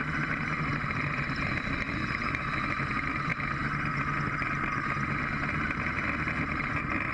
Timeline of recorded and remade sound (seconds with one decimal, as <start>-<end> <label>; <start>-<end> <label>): 0.0-0.7 recorded; 0.7-2.4 remade; 2.4-7.1 recorded